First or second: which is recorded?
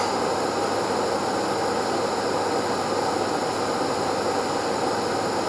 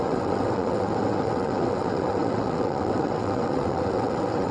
first